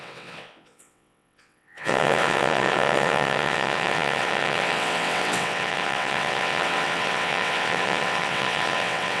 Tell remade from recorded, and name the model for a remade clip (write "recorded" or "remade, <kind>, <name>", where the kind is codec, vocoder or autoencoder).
remade, vocoder, WaveNeXt